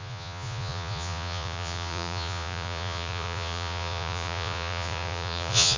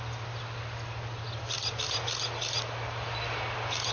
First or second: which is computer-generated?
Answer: first